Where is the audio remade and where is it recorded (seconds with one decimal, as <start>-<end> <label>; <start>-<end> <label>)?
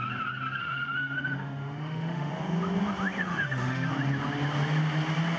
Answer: 0.0-0.6 recorded; 0.6-2.3 remade; 2.3-3.2 recorded; 3.2-3.9 remade; 3.9-5.4 recorded